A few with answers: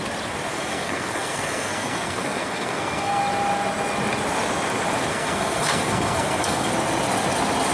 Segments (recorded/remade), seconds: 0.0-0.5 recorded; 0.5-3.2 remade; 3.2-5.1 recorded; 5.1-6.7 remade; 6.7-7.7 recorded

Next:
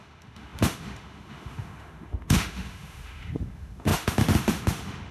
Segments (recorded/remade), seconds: 0.0-5.1 remade

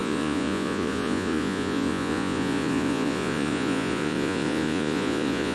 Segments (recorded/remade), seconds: 0.0-5.5 remade

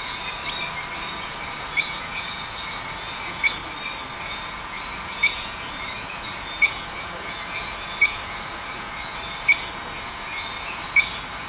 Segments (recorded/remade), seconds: 0.0-0.4 remade; 0.4-1.0 recorded; 1.0-3.6 remade; 3.6-4.2 recorded; 4.2-11.5 remade